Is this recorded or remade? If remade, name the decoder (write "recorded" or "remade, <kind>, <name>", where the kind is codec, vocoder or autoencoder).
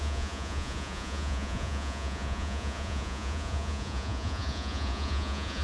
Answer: remade, vocoder, Vocos